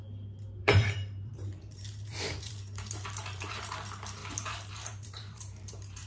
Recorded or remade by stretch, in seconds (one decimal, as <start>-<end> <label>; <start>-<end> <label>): 0.0-0.6 recorded; 0.6-3.6 remade; 3.6-4.2 recorded; 4.2-6.1 remade